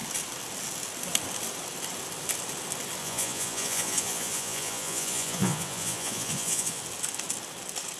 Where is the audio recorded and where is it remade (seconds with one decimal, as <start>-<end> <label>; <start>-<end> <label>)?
0.0-3.0 recorded; 3.0-6.8 remade; 6.8-8.0 recorded

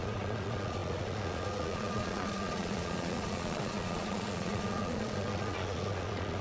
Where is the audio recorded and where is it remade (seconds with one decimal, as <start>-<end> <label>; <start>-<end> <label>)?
0.0-6.4 remade

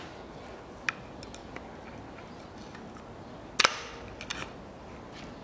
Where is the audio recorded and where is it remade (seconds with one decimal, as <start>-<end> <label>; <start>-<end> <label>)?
0.0-5.4 recorded